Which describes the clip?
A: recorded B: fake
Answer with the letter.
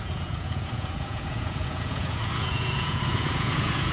B